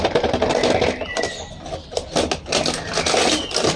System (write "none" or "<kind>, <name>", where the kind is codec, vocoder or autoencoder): none